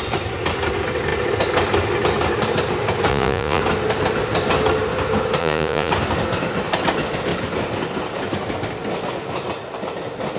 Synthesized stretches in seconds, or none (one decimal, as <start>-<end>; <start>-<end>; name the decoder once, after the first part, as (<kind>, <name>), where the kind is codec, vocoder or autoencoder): 3.1-3.6 (vocoder, Vocos); 5.4-5.9

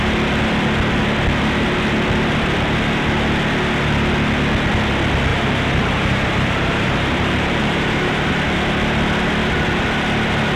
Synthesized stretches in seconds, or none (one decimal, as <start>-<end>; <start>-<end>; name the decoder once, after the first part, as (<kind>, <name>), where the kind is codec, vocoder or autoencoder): 5.3-8.3 (vocoder, BigVGAN v2)

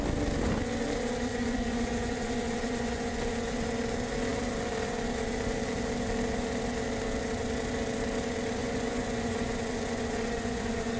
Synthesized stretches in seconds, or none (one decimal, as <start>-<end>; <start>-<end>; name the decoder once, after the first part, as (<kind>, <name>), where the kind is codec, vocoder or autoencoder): 1.3-3.5 (vocoder, Vocos); 8.6-11.0